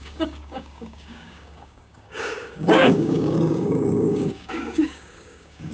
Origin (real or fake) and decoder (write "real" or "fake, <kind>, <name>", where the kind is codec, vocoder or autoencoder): fake, codec, DAC